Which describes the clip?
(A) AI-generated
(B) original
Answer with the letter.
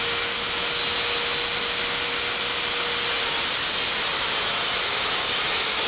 B